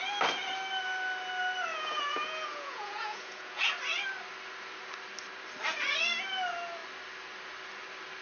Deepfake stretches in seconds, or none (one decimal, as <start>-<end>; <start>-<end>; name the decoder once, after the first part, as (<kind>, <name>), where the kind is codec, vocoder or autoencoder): 1.7-3.7 (vocoder, Vocos)